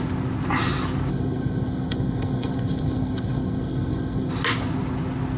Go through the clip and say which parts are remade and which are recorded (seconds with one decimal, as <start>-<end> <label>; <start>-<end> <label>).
0.0-1.1 recorded; 1.1-4.3 remade; 4.3-5.4 recorded